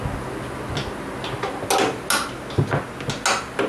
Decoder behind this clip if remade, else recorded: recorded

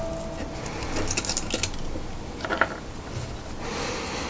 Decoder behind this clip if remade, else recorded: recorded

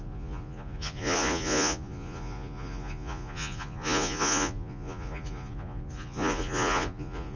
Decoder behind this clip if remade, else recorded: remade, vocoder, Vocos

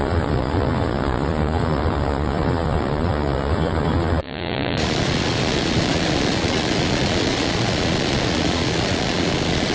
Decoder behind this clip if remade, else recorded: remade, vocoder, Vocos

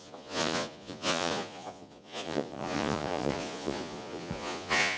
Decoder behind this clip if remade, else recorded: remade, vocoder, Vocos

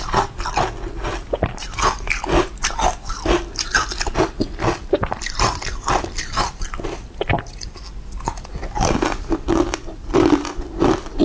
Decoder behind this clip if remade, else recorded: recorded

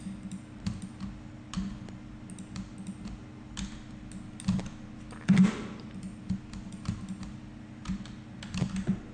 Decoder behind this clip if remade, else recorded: recorded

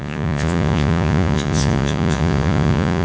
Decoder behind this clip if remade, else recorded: remade, vocoder, Vocos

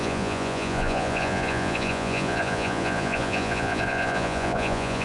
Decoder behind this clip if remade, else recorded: remade, vocoder, Vocos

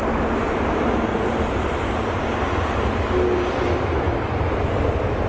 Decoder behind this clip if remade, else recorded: recorded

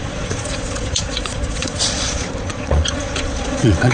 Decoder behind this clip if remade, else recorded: remade, vocoder, Vocos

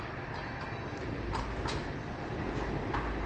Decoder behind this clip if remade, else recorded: recorded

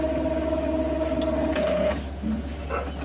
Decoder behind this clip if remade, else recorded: recorded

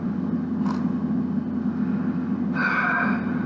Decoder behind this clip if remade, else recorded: recorded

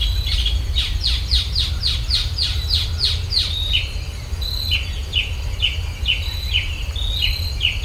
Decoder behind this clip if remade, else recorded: recorded